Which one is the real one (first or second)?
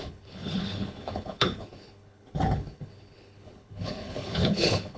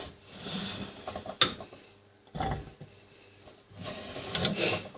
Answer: second